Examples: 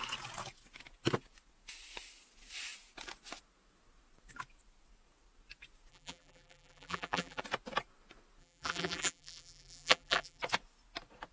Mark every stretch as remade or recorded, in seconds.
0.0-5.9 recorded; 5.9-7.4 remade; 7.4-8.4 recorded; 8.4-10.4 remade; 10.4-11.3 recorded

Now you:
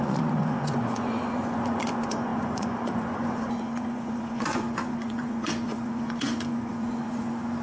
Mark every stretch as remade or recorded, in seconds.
0.0-7.6 remade

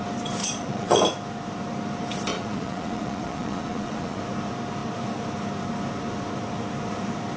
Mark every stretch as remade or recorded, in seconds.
0.0-0.4 recorded; 0.4-1.0 remade; 1.0-2.3 recorded; 2.3-4.2 remade; 4.2-7.4 recorded